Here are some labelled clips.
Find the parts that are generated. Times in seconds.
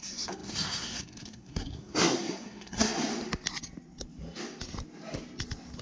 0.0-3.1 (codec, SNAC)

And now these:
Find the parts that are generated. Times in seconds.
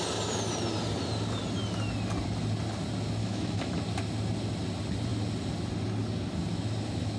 3.2-3.8 (autoencoder, DAC-VAE)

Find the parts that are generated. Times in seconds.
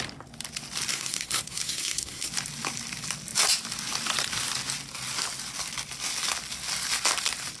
0.9-2.3 (codec, SNAC)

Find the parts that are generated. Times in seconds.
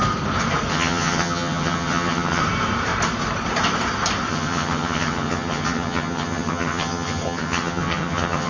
0.7-2.4 (vocoder, HiFi-GAN); 4.3-8.5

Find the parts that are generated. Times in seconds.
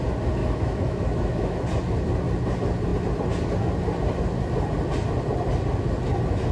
0.4-1.6 (autoencoder, DAC-VAE)